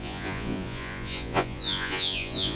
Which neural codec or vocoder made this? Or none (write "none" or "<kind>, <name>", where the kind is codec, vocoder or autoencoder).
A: vocoder, Vocos